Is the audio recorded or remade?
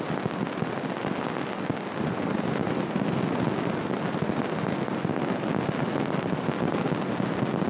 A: recorded